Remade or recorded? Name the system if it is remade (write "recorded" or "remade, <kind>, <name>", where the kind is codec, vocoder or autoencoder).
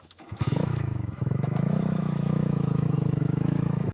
remade, autoencoder, DAC-VAE